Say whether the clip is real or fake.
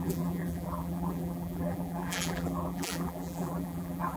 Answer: fake